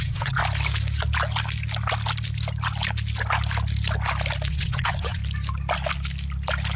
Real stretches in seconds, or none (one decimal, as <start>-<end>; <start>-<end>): 0.4-4.5; 5.2-6.8